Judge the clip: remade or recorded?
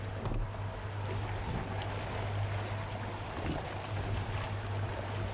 recorded